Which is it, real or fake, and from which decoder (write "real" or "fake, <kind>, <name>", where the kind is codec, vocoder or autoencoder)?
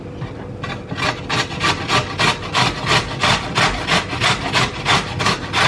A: real